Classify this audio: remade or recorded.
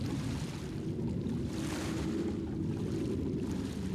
recorded